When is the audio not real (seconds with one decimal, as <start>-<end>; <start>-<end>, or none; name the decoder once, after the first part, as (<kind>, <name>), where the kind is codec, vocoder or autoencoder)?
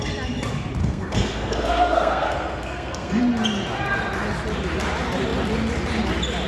0.8-3.2 (codec, SNAC)